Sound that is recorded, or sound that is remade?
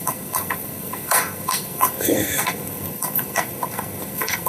remade